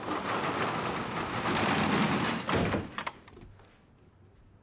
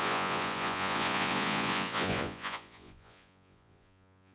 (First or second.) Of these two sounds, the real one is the first